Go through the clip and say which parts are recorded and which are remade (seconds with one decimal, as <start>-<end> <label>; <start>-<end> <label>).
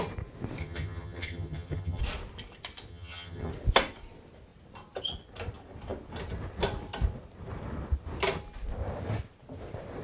0.0-0.6 recorded; 0.6-2.0 remade; 2.0-2.9 recorded; 2.9-3.5 remade; 3.5-10.0 recorded